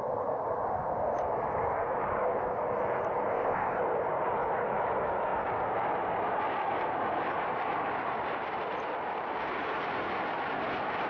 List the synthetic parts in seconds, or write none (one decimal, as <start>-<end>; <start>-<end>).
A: 3.3-3.8